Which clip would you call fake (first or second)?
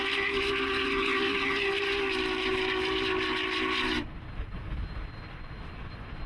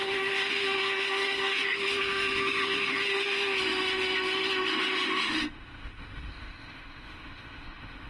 second